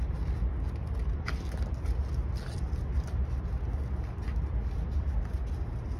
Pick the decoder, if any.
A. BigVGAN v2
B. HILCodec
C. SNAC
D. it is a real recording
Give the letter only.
D